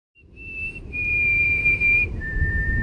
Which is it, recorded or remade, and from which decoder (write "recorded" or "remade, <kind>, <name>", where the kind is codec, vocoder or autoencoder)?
remade, vocoder, BigVGAN v2